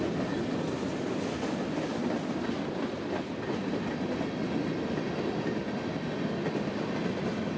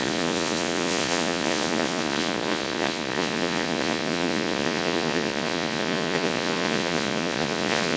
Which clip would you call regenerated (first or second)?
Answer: second